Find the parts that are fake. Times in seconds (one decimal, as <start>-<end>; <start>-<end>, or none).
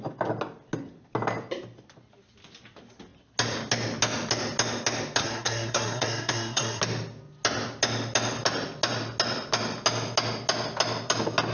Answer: 5.2-6.8